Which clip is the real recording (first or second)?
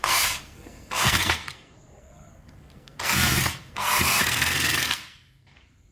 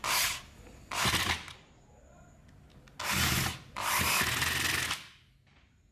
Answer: second